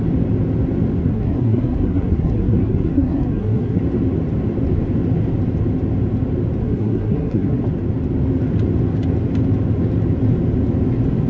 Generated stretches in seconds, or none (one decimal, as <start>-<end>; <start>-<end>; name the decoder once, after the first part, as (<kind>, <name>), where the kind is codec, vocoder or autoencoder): 1.0-3.8 (codec, SNAC); 6.6-7.6